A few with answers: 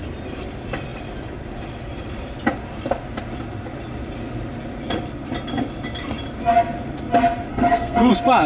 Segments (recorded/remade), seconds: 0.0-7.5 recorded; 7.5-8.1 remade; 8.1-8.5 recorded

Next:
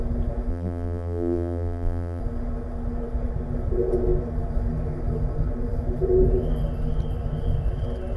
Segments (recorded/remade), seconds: 0.0-0.5 recorded; 0.5-2.2 remade; 2.2-8.2 recorded

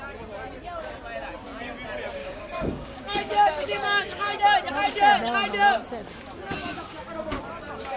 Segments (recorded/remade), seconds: 0.0-2.2 recorded; 2.2-4.4 remade; 4.4-6.6 recorded; 6.6-7.4 remade; 7.4-8.0 recorded

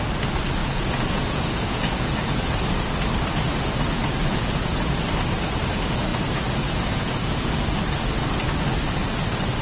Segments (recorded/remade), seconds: 0.0-0.6 recorded; 0.6-2.5 remade; 2.5-4.2 recorded; 4.2-4.9 remade; 4.9-6.1 recorded; 6.1-7.5 remade; 7.5-9.6 recorded

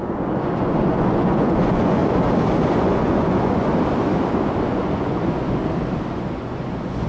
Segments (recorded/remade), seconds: 0.0-2.0 remade; 2.0-2.7 recorded; 2.7-3.7 remade; 3.7-4.7 recorded; 4.7-5.6 remade; 5.6-6.1 recorded; 6.1-7.1 remade

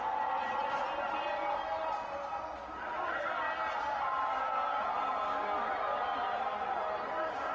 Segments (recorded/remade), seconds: 0.0-7.5 recorded

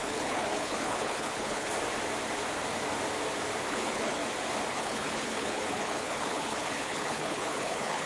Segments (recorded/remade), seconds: 0.0-1.7 remade; 1.7-3.7 recorded; 3.7-4.2 remade; 4.2-4.7 recorded; 4.7-8.1 remade

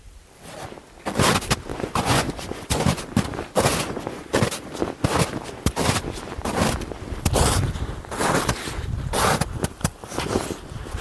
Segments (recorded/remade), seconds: 0.0-1.7 recorded; 1.7-3.0 remade; 3.0-3.7 recorded; 3.7-4.3 remade; 4.3-11.0 recorded